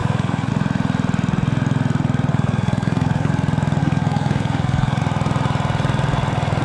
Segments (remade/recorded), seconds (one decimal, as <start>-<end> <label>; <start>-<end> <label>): 0.0-0.5 remade; 0.5-2.3 recorded; 2.3-3.3 remade; 3.3-3.8 recorded; 3.8-5.0 remade; 5.0-6.6 recorded